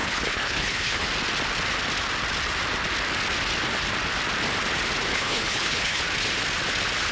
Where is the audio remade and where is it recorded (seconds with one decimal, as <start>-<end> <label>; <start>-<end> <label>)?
0.0-1.1 remade; 1.1-5.1 recorded; 5.1-6.0 remade; 6.0-7.1 recorded